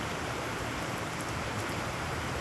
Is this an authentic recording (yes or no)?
no